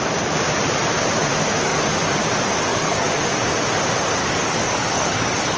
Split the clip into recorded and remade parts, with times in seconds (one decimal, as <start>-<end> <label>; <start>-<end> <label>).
0.0-2.7 recorded; 2.7-3.3 remade; 3.3-4.2 recorded; 4.2-5.6 remade